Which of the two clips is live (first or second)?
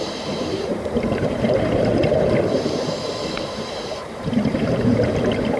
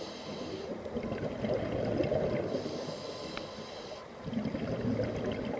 second